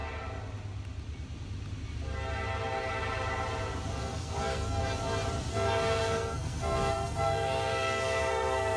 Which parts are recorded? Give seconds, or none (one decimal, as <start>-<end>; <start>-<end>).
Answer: 0.0-4.0; 4.8-5.5